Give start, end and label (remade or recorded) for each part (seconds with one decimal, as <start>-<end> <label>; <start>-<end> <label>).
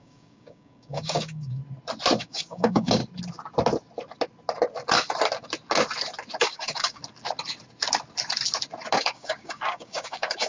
0.0-1.6 remade; 1.6-2.2 recorded; 2.2-3.0 remade; 3.0-6.4 recorded; 6.4-7.0 remade; 7.0-9.0 recorded; 9.0-10.5 remade